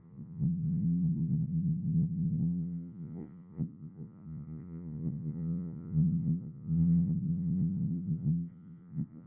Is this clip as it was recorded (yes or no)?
no